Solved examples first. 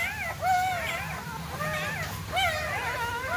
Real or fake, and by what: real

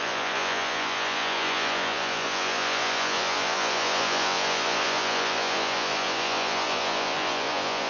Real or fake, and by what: fake, vocoder, Vocos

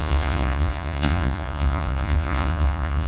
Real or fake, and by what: fake, vocoder, Vocos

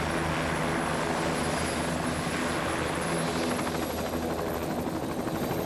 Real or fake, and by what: real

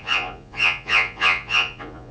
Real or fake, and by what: fake, vocoder, Vocos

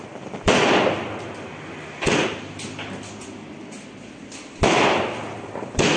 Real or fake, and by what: real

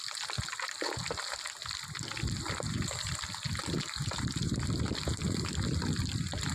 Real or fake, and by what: real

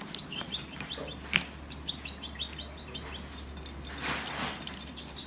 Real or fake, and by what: real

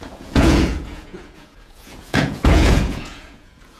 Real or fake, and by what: fake, vocoder, Vocos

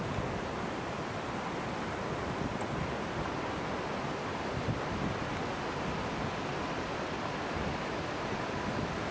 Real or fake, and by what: real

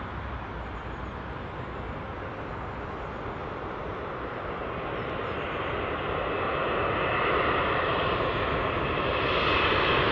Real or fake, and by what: real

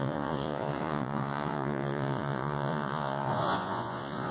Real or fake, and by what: fake, vocoder, Vocos